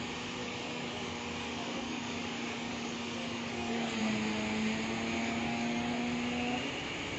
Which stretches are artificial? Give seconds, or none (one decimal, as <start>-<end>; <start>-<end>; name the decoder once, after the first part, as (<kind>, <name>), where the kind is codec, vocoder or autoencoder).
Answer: 0.4-4.0 (codec, DAC); 5.2-5.9